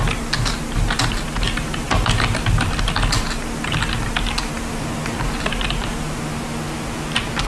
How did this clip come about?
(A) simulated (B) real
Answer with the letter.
B